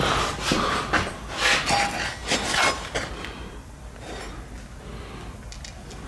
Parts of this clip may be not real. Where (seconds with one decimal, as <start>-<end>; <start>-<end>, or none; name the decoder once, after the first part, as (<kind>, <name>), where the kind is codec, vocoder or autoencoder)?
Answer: none